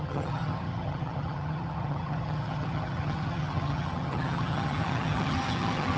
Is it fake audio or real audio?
fake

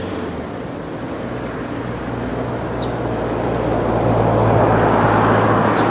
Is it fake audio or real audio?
real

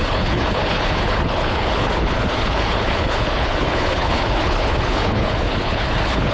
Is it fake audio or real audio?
fake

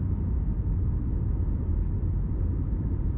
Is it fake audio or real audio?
fake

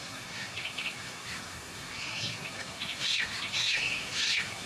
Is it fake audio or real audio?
fake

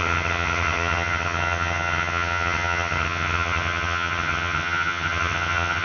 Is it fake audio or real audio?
fake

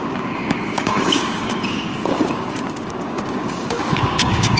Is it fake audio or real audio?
fake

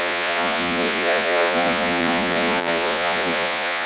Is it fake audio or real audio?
fake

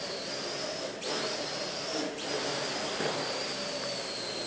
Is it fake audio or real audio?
real